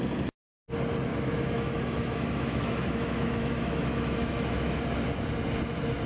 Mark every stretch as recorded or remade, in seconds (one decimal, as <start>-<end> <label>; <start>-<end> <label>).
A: 0.0-1.1 recorded; 1.1-4.8 remade; 4.8-6.1 recorded